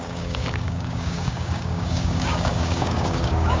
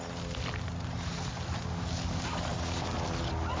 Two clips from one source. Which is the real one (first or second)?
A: second